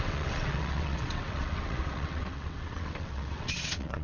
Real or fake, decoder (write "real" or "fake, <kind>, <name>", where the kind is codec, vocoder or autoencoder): fake, vocoder, WaveNeXt